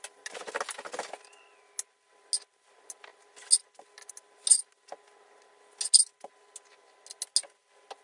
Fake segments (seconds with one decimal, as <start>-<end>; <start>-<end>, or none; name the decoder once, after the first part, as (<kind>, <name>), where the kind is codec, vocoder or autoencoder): none